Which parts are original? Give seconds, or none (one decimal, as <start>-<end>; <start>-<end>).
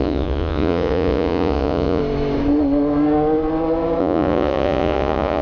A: 2.0-4.0